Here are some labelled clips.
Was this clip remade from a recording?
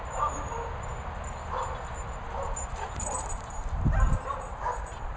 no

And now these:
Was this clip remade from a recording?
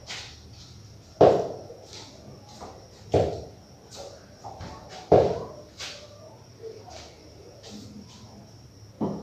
no